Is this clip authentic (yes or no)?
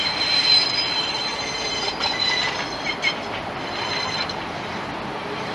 yes